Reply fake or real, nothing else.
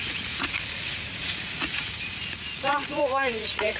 fake